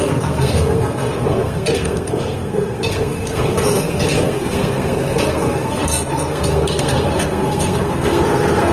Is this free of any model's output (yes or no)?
no